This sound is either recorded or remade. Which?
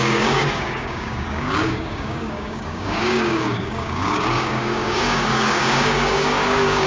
remade